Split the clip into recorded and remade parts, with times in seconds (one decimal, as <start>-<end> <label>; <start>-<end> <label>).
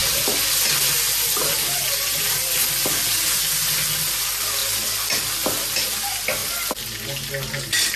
0.0-8.0 recorded